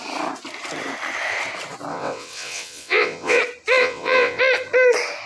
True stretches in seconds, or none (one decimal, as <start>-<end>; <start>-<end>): 0.0-1.9; 3.4-3.8; 4.4-5.3